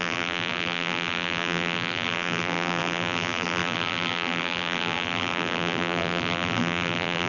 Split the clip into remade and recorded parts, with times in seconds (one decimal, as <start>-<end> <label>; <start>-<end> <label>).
0.0-7.3 remade